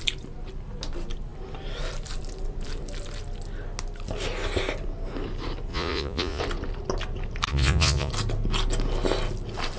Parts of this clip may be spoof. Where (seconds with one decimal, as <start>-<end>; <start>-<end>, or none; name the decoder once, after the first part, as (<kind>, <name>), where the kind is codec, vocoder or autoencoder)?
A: 5.7-6.4 (vocoder, Vocos); 7.5-8.1